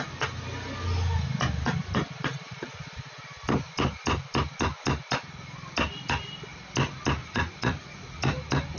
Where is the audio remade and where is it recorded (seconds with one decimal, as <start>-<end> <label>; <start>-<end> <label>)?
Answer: 0.0-7.2 recorded; 7.2-8.2 remade; 8.2-8.8 recorded